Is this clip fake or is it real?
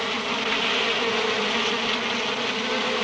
real